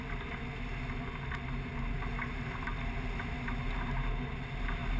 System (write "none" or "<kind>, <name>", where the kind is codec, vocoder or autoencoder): none